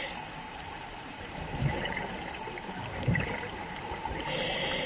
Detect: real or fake fake